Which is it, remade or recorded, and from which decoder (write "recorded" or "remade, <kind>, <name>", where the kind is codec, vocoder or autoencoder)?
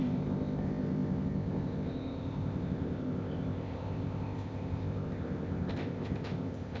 remade, codec, ZipCodec